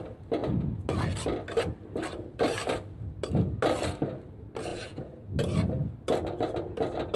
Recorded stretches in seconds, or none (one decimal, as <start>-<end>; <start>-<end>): 0.0-4.7; 5.3-7.2